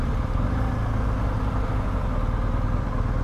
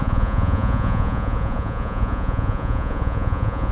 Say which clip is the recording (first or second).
first